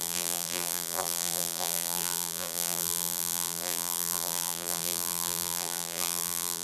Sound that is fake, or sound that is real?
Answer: fake